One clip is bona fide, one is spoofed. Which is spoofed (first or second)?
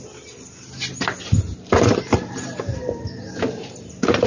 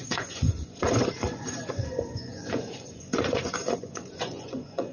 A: second